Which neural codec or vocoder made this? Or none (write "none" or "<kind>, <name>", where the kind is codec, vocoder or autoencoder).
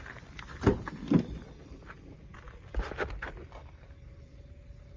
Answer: none